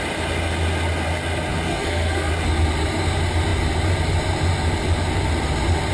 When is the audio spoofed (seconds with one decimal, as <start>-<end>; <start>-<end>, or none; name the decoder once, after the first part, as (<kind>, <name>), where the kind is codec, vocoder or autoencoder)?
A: 1.7-2.3 (codec, SNAC)